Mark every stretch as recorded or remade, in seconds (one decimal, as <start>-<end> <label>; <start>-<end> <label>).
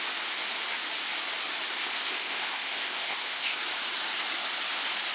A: 0.0-1.8 recorded; 1.8-3.6 remade; 3.6-5.1 recorded